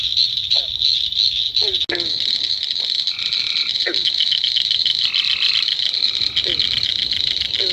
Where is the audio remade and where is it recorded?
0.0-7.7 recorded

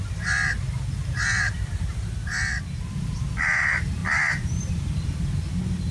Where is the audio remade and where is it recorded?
0.0-4.0 recorded; 4.0-5.5 remade; 5.5-5.9 recorded

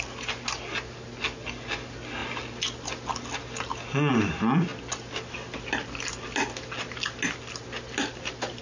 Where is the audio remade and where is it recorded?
0.0-8.6 recorded

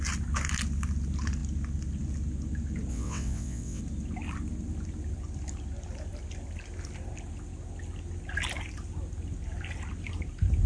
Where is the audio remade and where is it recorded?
0.0-2.9 recorded; 2.9-3.8 remade; 3.8-10.7 recorded